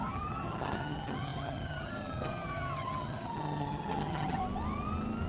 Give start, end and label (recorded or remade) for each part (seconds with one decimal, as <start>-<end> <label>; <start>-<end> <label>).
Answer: 0.0-4.4 remade; 4.4-5.3 recorded